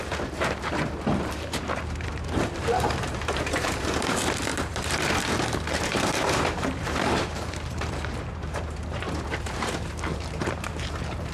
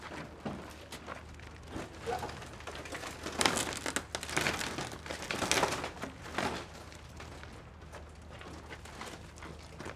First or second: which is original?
second